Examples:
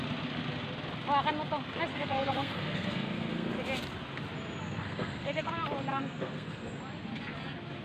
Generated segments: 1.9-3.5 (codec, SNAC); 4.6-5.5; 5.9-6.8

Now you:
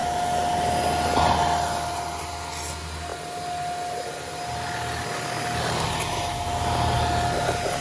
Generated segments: none

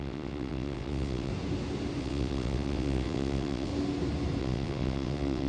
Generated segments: 0.0-1.3 (vocoder, WaveNeXt); 2.0-3.7; 4.4-5.5

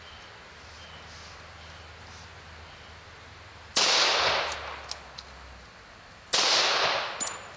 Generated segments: none

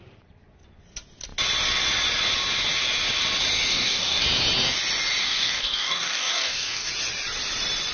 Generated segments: 3.7-4.2 (codec, DAC); 5.2-6.9

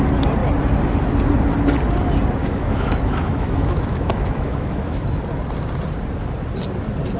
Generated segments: 2.4-5.2 (autoencoder, DAC-VAE)